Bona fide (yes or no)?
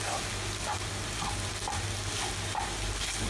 yes